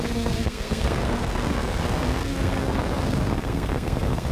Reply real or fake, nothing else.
fake